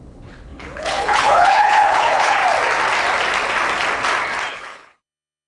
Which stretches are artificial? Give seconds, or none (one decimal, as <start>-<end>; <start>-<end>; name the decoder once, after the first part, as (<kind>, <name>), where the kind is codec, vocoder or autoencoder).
0.0-2.4 (codec, HILCodec); 4.5-5.5